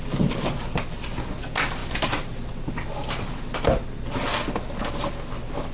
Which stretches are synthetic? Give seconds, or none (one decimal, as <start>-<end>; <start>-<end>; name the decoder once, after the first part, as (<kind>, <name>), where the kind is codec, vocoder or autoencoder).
none